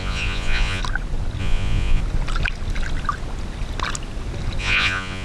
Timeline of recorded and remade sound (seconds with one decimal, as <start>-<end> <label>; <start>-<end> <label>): 0.0-0.8 remade; 0.8-1.4 recorded; 1.4-2.0 remade; 2.0-4.6 recorded; 4.6-5.2 remade